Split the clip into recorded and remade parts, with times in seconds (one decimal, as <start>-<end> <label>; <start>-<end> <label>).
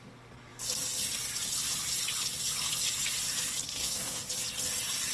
0.0-3.7 recorded; 3.7-4.3 remade; 4.3-5.1 recorded